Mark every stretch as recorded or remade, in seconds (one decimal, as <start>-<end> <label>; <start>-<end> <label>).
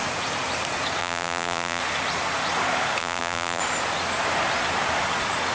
0.0-1.0 recorded; 1.0-1.8 remade; 1.8-3.0 recorded; 3.0-3.6 remade; 3.6-5.5 recorded